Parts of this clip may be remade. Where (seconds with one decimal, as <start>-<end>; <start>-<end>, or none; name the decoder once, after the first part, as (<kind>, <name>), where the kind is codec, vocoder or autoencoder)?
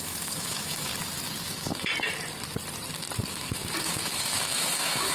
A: 0.0-0.9 (autoencoder, DAC-VAE); 1.4-1.9; 3.3-5.1